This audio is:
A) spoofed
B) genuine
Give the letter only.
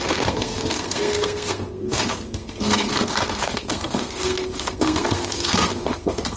A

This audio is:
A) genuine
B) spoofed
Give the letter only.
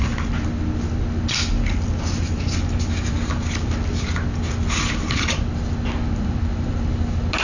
A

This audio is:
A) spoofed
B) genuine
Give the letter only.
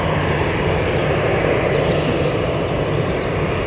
B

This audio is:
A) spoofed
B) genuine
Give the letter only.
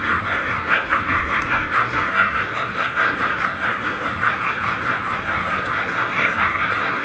A